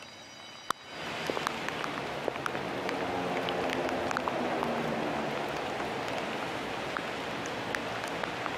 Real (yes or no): yes